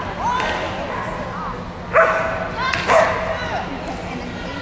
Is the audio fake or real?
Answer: real